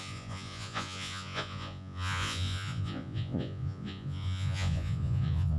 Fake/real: fake